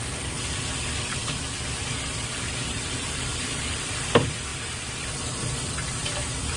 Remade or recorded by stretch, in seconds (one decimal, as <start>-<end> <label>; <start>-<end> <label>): 0.0-4.5 remade; 4.5-6.6 recorded